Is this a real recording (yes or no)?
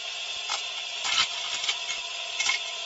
yes